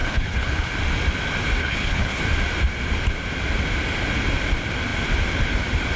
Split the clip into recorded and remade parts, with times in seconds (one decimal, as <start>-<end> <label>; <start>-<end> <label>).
0.0-0.7 remade; 0.7-1.6 recorded; 1.6-2.2 remade; 2.2-6.0 recorded